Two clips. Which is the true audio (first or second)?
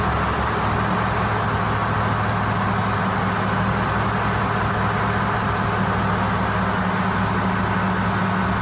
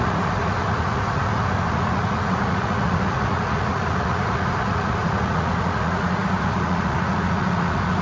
first